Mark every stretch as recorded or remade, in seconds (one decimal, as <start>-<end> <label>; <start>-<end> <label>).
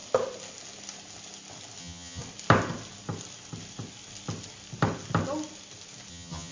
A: 0.0-1.8 recorded; 1.8-2.2 remade; 2.2-6.1 recorded; 6.1-6.5 remade